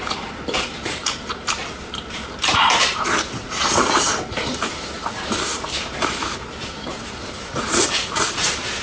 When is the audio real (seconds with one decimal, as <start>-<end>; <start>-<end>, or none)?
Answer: none